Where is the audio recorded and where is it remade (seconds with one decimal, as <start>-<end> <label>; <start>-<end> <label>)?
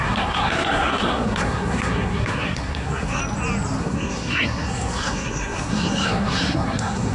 0.0-3.2 remade; 3.2-3.8 recorded; 3.8-7.1 remade